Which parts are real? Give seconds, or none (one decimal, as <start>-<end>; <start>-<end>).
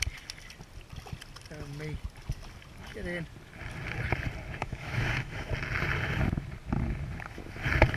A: 0.0-4.6; 5.5-8.0